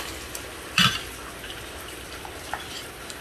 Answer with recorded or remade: recorded